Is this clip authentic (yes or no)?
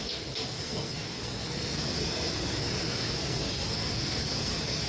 no